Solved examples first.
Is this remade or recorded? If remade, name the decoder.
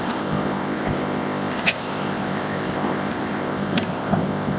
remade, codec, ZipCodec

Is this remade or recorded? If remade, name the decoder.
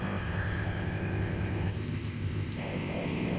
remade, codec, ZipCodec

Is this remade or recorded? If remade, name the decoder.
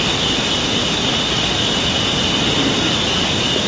recorded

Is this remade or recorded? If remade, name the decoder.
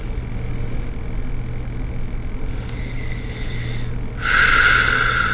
recorded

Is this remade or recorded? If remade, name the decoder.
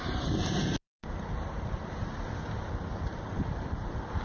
recorded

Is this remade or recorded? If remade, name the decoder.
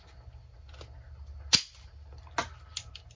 recorded